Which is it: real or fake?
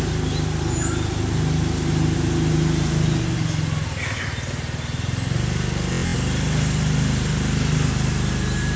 real